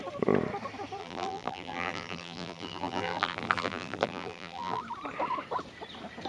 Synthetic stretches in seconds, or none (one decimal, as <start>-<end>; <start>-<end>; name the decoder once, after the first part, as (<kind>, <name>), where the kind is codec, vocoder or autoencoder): 1.0-4.8 (vocoder, BigVGAN v2)